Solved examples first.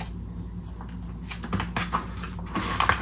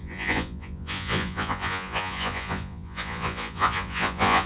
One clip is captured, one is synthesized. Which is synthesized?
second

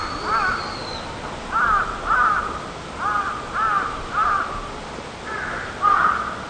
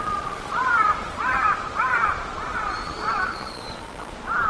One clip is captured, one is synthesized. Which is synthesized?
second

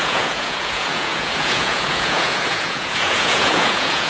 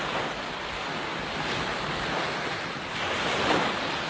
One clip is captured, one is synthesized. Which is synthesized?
first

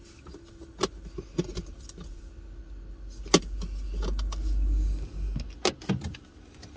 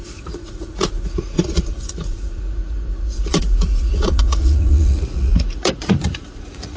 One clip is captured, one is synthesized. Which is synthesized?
second